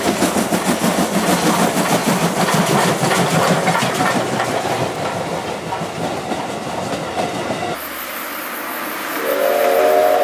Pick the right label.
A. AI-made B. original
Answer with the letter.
B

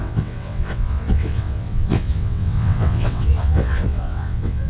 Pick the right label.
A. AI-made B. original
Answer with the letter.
A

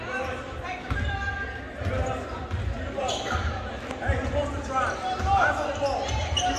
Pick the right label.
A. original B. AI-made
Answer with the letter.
A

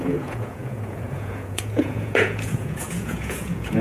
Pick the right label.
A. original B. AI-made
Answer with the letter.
B